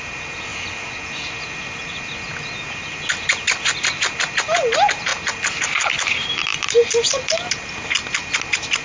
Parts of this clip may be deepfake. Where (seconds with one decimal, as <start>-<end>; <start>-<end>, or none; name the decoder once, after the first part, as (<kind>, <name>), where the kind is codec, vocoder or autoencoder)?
none